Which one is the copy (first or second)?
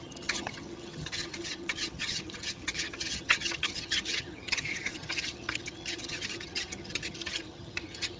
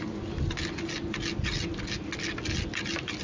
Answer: first